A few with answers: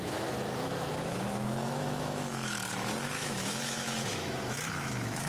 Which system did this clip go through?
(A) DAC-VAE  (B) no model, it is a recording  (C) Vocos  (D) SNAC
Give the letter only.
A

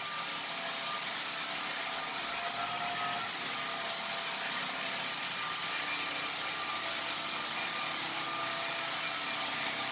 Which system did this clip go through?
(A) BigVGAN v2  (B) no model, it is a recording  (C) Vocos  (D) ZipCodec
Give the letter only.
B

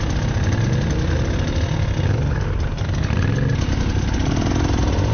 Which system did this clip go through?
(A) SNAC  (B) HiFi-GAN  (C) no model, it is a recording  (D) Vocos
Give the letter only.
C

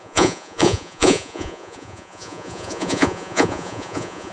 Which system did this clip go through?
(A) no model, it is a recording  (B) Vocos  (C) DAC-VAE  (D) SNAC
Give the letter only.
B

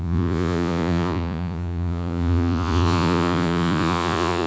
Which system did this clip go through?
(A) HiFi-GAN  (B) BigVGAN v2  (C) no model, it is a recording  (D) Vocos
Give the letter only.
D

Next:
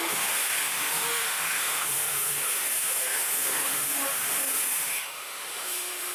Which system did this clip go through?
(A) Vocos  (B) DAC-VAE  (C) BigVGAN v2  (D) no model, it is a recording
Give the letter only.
B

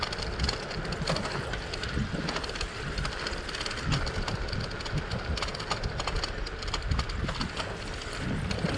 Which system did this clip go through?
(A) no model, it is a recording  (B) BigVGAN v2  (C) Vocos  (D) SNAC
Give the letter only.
A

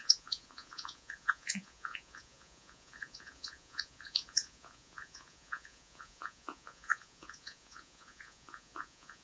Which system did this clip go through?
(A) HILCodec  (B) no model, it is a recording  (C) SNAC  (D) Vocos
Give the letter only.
D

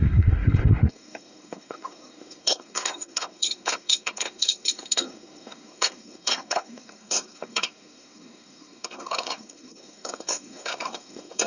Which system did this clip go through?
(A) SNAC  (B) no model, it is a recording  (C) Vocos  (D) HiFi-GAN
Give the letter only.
A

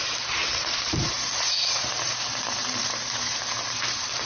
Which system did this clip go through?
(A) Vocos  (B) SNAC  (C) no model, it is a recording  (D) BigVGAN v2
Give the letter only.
D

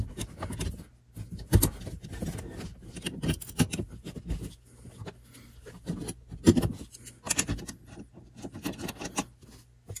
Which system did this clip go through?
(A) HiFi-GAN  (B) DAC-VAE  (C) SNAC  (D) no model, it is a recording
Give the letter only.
D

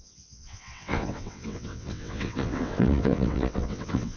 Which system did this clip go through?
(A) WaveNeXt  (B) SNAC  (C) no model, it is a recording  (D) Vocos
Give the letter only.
A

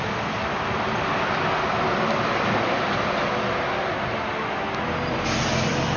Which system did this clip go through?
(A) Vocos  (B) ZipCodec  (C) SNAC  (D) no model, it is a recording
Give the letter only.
D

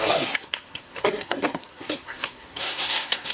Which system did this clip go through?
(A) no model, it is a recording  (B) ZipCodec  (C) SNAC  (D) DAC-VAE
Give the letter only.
C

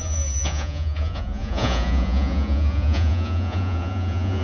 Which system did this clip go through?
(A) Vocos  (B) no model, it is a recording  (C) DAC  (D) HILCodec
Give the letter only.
A